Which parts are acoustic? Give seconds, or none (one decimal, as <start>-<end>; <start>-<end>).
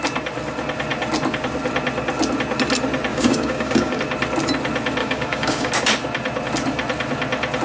0.0-3.1; 4.0-5.0; 5.7-7.6